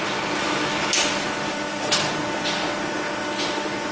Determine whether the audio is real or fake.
real